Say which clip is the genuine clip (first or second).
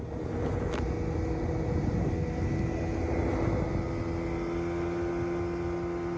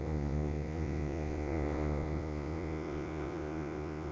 first